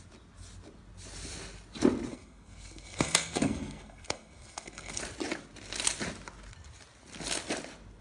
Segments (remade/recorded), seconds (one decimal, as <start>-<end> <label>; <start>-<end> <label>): 0.0-2.1 recorded; 2.1-5.0 remade; 5.0-8.0 recorded

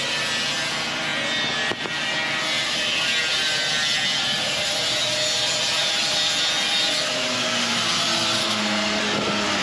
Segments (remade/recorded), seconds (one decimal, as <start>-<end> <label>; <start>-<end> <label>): 0.0-8.4 recorded; 8.4-9.0 remade; 9.0-9.6 recorded

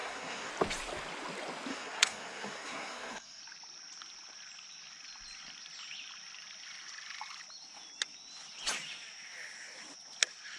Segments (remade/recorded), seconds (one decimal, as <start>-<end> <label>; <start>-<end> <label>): 0.0-0.5 remade; 0.5-1.7 recorded; 1.7-3.4 remade; 3.4-10.6 recorded

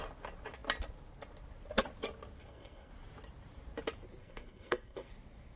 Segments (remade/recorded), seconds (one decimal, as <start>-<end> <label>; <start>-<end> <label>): 0.0-2.4 recorded; 2.4-2.9 remade; 2.9-4.2 recorded; 4.2-5.1 remade; 5.1-5.6 recorded

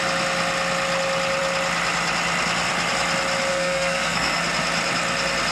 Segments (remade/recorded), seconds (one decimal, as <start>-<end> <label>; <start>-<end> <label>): 0.0-3.5 recorded; 3.5-4.4 remade; 4.4-5.5 recorded